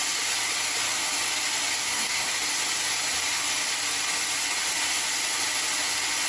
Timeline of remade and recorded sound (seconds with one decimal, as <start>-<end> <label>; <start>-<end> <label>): 0.0-1.8 recorded; 1.8-2.3 remade; 2.3-6.3 recorded